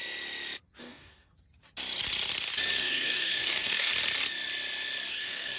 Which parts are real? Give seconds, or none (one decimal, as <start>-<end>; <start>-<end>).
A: 0.0-0.8; 1.3-2.8; 3.9-5.1